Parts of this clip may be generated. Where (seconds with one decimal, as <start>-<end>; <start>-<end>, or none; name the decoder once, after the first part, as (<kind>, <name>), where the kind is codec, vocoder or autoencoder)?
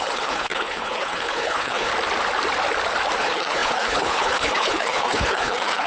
0.0-1.9 (codec, HILCodec); 3.2-5.9